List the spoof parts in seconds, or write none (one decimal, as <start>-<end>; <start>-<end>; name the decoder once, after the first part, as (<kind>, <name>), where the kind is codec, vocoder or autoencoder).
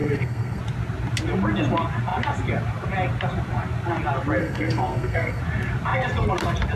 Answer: 0.0-0.6 (codec, SNAC); 4.4-5.4